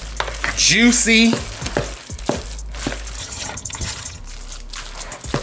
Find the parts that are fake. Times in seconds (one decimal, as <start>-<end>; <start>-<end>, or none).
3.2-4.2